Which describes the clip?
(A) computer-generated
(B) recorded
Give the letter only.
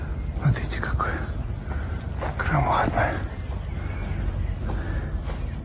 B